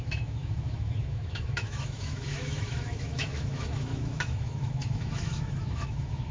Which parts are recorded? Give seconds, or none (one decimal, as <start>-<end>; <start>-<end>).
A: none